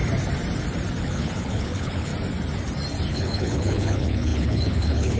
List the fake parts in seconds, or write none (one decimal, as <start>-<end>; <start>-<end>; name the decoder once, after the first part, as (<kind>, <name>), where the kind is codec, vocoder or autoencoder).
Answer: 1.0-2.1 (codec, HILCodec); 3.1-5.2